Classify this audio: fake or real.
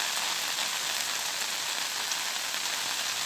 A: real